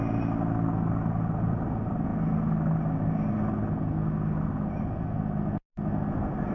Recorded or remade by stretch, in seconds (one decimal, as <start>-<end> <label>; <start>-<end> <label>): 0.0-6.5 recorded